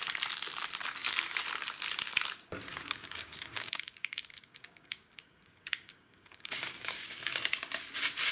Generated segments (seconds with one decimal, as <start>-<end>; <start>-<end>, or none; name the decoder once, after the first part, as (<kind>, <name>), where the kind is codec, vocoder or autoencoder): 2.7-7.3 (codec, DAC)